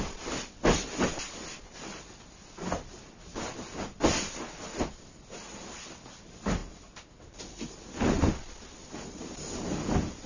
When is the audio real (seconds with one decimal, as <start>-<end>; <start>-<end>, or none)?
0.0-10.3